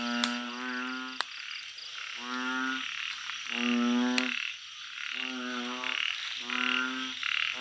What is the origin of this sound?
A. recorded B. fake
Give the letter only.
A